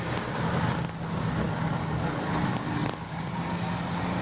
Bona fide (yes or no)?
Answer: yes